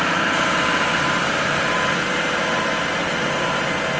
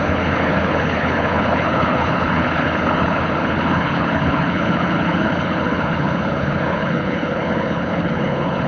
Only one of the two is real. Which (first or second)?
first